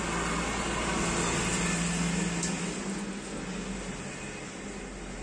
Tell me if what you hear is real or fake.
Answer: real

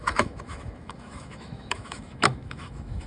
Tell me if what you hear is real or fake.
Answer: fake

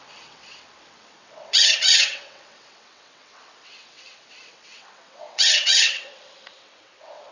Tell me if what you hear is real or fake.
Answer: fake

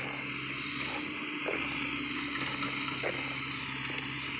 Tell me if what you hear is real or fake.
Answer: real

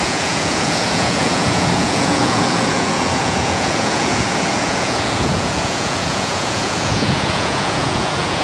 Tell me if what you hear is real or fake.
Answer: fake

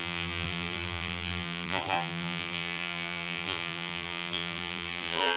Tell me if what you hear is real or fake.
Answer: fake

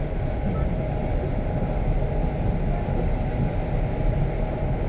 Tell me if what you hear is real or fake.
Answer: real